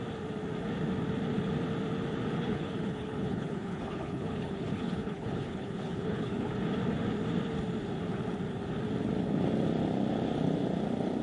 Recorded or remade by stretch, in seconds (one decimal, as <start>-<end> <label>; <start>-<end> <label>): 0.0-2.3 recorded; 2.3-6.5 remade; 6.5-11.2 recorded